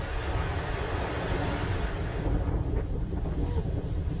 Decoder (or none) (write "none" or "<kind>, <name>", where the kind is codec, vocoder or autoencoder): none